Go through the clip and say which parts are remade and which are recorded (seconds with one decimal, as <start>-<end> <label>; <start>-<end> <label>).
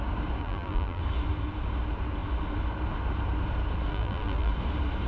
0.0-0.4 recorded; 0.4-1.0 remade; 1.0-3.9 recorded; 3.9-4.5 remade; 4.5-5.1 recorded